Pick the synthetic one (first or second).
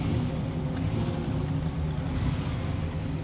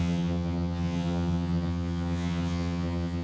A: second